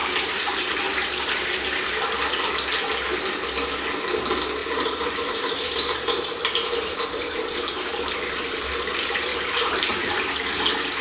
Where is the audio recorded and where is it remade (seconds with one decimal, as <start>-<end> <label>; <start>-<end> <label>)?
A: 0.0-1.9 remade; 1.9-4.6 recorded; 4.6-7.8 remade; 7.8-9.3 recorded; 9.3-10.5 remade; 10.5-11.0 recorded